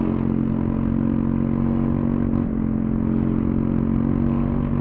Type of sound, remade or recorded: recorded